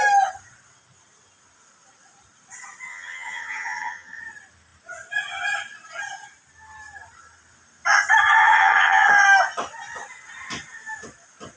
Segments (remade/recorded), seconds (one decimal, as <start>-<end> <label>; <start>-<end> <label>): 0.0-2.9 recorded; 2.9-4.2 remade; 4.2-8.4 recorded; 8.4-9.1 remade; 9.1-11.6 recorded

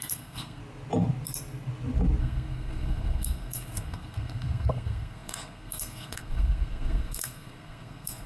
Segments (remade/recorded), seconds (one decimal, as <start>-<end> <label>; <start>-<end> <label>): 0.0-0.6 remade; 0.6-2.2 recorded; 2.2-8.3 remade

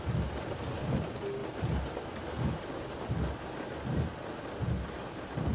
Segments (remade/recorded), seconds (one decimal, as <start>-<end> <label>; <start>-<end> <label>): 0.0-5.5 recorded

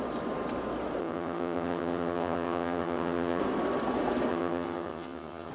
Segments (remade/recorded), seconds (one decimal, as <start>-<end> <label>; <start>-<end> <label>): 0.0-1.0 recorded; 1.0-3.4 remade; 3.4-4.3 recorded; 4.3-5.5 remade

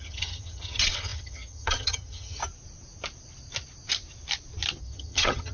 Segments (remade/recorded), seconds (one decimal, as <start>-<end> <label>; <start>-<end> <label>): 0.0-2.4 remade; 2.4-4.8 recorded; 4.8-5.5 remade

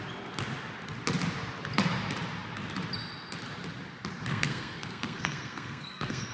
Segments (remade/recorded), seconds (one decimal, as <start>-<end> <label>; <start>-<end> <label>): 0.0-4.3 recorded; 4.3-6.3 remade

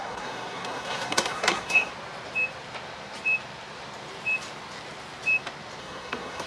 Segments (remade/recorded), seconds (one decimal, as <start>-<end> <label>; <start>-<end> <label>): 0.0-1.9 remade; 1.9-5.8 recorded; 5.8-6.5 remade

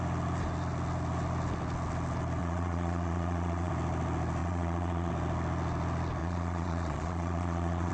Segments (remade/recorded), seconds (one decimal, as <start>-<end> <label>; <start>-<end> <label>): 0.0-2.4 recorded; 2.4-3.7 remade; 3.7-4.4 recorded; 4.4-5.1 remade; 5.1-6.2 recorded; 6.2-7.9 remade